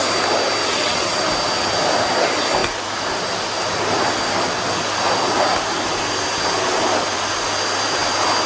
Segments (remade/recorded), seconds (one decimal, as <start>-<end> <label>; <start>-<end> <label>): 0.0-0.6 recorded; 0.6-1.2 remade; 1.2-8.5 recorded